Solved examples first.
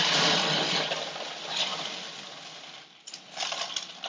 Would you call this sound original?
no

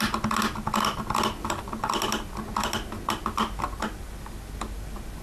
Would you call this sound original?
yes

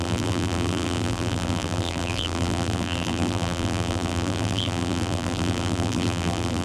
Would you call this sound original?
no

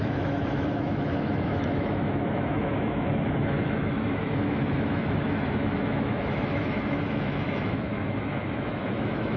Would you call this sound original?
no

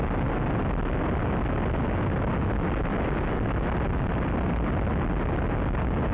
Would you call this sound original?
yes